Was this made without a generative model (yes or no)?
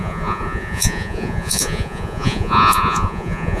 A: no